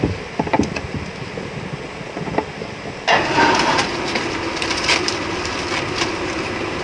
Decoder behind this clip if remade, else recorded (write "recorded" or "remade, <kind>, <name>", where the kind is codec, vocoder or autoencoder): recorded